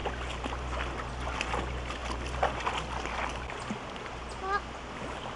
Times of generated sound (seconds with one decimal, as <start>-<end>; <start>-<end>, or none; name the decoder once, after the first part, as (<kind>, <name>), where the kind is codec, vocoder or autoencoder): none